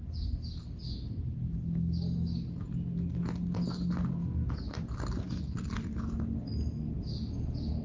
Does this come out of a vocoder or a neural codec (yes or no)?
no